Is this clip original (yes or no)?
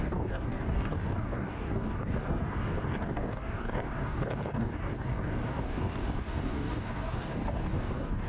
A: no